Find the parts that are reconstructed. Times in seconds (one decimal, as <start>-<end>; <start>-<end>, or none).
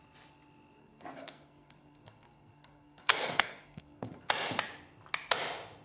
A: 0.8-4.3